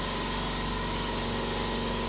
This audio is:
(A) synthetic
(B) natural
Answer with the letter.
A